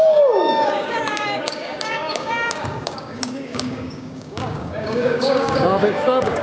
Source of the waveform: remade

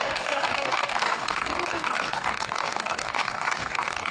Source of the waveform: remade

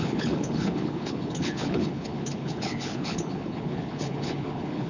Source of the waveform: remade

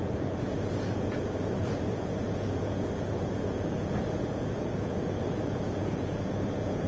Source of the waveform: remade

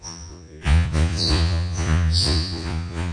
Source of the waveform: remade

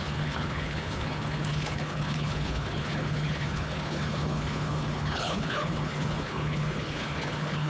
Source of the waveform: remade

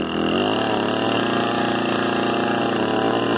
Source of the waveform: recorded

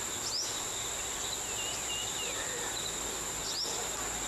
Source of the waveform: recorded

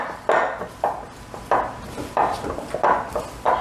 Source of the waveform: recorded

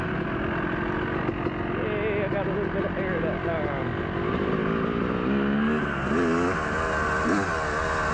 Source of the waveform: recorded